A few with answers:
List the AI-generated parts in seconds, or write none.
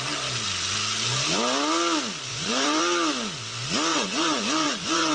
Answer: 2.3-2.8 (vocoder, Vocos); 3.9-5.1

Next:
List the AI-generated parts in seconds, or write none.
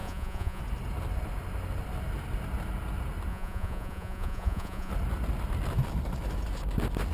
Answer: 0.0-0.6 (vocoder, Vocos); 3.3-4.9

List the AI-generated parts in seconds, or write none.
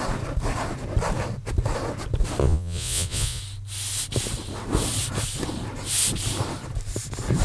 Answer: 2.4-3.4 (vocoder, Vocos)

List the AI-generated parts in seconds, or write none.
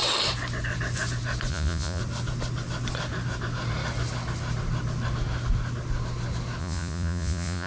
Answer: 1.5-2.0 (vocoder, Vocos); 6.6-7.7